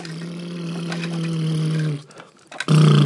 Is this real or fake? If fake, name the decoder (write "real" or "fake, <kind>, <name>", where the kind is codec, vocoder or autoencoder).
real